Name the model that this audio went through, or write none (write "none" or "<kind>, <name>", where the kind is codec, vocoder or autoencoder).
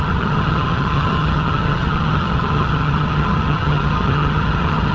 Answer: vocoder, HiFi-GAN